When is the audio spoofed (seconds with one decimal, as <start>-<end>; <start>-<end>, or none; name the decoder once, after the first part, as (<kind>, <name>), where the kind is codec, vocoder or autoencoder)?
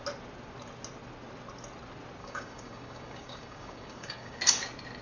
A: 2.2-4.4 (codec, DAC)